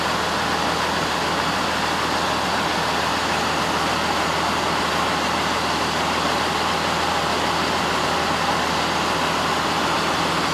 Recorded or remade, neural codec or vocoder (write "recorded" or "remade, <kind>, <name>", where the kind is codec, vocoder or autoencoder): recorded